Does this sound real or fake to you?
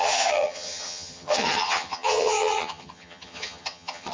fake